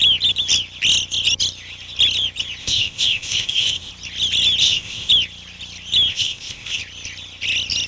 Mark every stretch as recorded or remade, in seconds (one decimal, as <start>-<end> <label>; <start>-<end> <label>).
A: 0.0-2.6 recorded; 2.6-3.9 remade; 3.9-4.6 recorded; 4.6-5.1 remade; 5.1-6.1 recorded; 6.1-6.8 remade; 6.8-7.9 recorded